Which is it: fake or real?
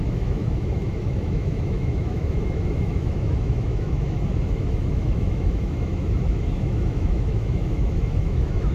fake